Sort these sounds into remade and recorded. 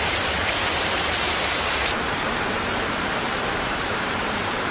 remade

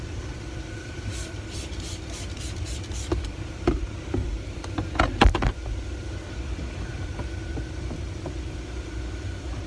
remade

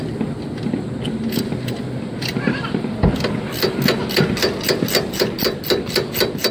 recorded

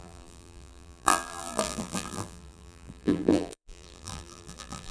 remade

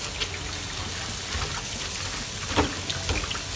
recorded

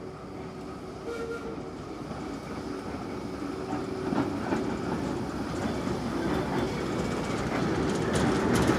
recorded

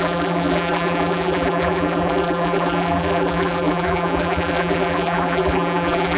remade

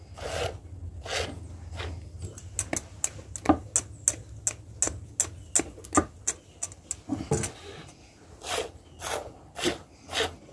recorded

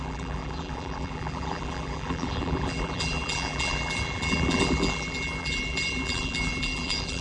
remade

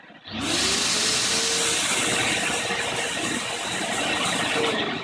recorded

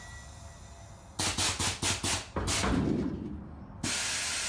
recorded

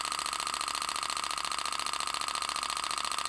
recorded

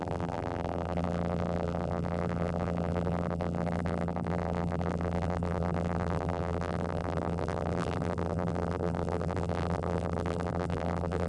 remade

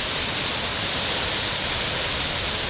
recorded